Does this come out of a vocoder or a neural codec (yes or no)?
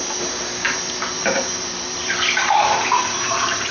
yes